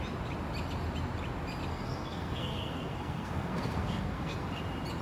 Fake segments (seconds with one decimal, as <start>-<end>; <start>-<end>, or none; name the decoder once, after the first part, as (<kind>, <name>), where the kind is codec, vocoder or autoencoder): 1.7-4.6 (codec, SNAC)